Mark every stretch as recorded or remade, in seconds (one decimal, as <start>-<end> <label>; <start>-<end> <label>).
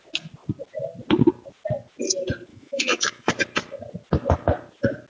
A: 0.0-2.5 recorded; 2.5-3.3 remade; 3.3-5.1 recorded